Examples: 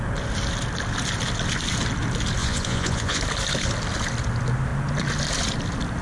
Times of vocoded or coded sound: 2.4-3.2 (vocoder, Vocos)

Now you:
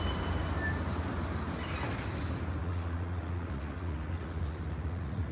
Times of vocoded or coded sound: 2.6-5.3 (vocoder, Vocos)